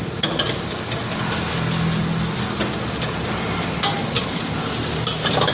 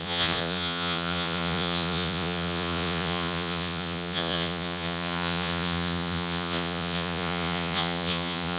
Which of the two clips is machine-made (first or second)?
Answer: second